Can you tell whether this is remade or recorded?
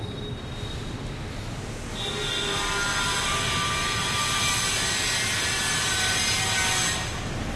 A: recorded